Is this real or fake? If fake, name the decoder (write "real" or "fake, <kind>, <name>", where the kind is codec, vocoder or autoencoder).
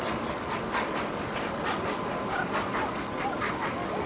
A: real